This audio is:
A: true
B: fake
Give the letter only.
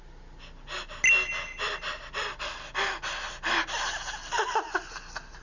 A